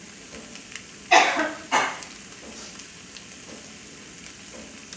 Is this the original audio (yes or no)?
yes